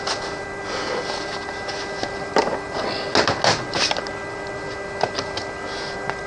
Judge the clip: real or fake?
real